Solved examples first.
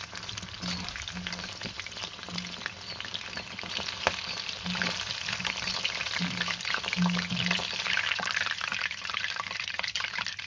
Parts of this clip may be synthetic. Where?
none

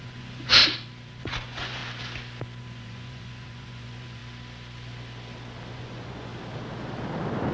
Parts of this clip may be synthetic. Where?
0.0-0.6; 1.2-1.8; 2.6-4.2; 5.7-6.3

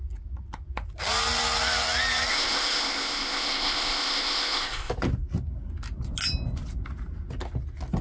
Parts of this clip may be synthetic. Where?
2.3-4.9

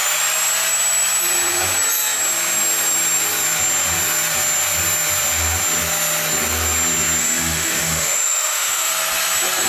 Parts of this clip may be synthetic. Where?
7.2-8.9

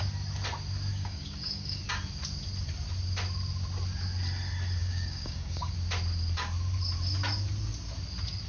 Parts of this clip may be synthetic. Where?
0.9-1.8; 4.8-5.7

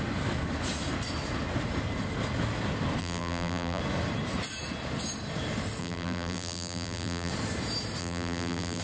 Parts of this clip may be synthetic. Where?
3.0-3.8; 5.8-7.3; 8.0-8.8